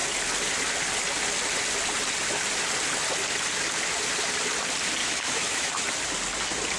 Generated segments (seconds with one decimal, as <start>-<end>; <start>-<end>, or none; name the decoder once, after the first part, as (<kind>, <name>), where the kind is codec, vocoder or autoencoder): 5.0-5.7 (autoencoder, DAC-VAE)